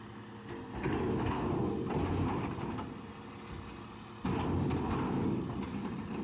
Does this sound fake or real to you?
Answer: real